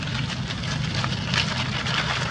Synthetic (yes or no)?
no